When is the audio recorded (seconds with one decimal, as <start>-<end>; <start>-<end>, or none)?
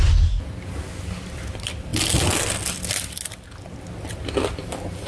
0.0-5.1